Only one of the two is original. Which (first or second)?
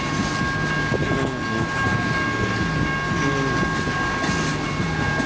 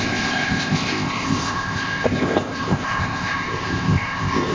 first